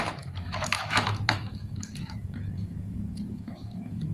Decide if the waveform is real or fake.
fake